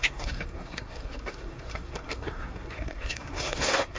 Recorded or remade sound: remade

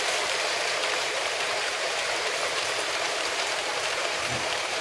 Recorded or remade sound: remade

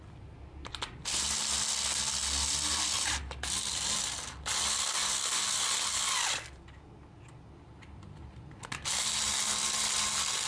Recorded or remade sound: recorded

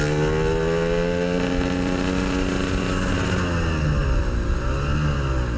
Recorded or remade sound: recorded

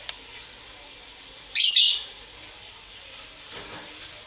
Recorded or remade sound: remade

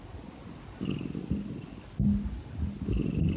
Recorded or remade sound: recorded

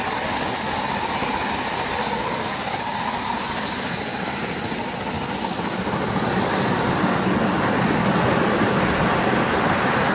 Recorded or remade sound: recorded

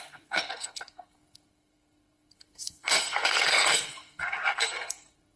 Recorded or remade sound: remade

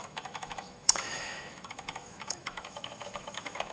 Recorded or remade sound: remade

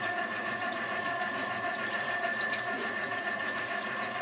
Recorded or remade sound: remade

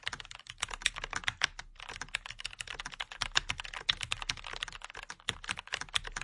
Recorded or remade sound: recorded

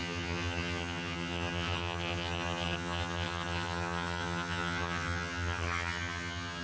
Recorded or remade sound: remade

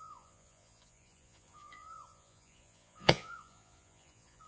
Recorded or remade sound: remade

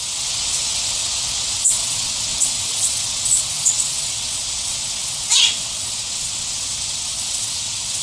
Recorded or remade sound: remade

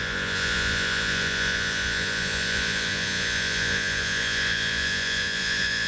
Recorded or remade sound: remade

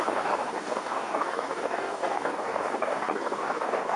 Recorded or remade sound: remade